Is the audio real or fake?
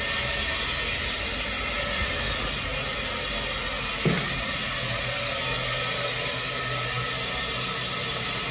real